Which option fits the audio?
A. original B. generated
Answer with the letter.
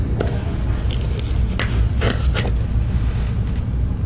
A